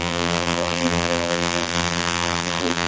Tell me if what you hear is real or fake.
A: fake